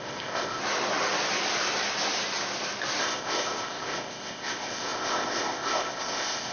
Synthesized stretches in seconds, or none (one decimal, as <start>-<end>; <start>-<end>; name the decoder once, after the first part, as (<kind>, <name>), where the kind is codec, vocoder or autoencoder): 0.0-0.6 (codec, ZipCodec); 3.0-6.5

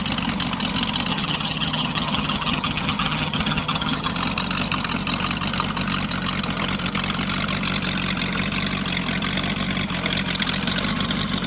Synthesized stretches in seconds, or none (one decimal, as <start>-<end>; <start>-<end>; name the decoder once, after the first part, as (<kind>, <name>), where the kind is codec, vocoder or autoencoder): 1.1-4.1 (vocoder, HiFi-GAN)

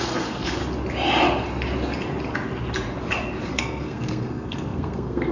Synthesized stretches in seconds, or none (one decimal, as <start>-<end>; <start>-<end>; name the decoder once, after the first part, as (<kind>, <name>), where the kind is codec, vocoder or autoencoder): 0.0-0.6 (codec, SNAC); 3.5-5.3